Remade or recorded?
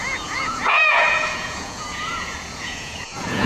remade